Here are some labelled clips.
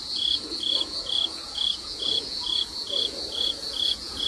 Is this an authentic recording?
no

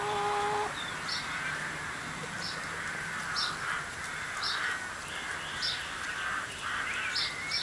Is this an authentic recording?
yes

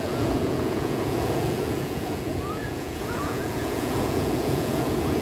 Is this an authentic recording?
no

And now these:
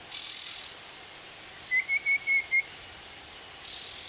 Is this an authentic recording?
yes